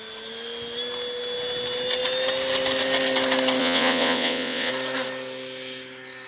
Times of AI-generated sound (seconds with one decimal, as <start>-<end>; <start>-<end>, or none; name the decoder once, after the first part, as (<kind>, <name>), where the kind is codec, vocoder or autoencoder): 3.6-4.7 (vocoder, WaveNeXt)